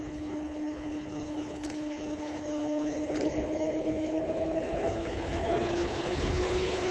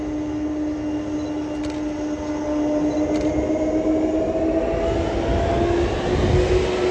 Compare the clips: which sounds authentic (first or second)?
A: second